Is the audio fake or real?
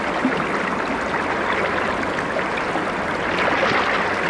real